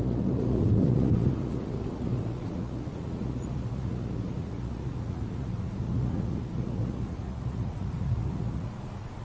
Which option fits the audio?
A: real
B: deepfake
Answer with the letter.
B